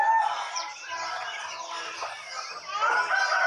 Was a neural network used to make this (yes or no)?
no